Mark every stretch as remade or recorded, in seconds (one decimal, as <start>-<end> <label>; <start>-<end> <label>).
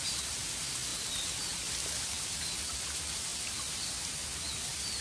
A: 0.0-3.3 recorded; 3.3-4.6 remade; 4.6-5.0 recorded